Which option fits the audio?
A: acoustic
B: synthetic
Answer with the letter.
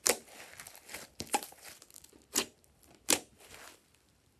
A